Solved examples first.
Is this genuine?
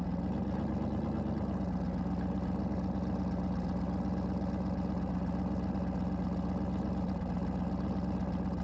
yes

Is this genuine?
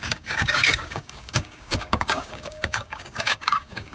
no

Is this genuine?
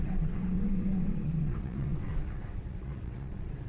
no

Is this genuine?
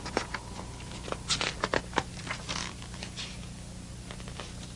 yes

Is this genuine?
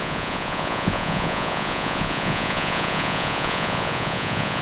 no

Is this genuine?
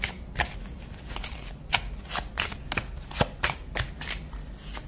yes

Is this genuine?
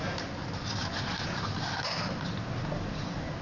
yes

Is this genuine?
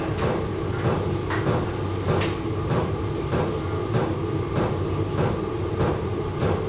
yes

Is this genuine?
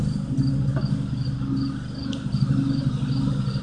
yes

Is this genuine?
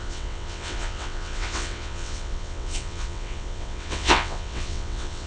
no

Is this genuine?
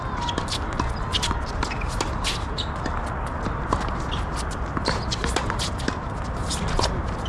yes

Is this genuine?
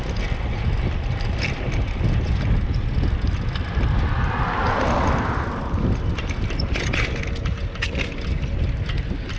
yes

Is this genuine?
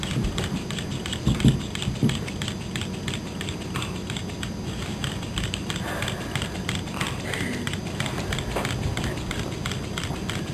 yes